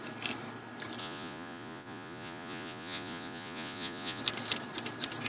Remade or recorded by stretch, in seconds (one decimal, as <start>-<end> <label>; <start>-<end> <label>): 0.0-1.0 recorded; 1.0-4.2 remade; 4.2-5.3 recorded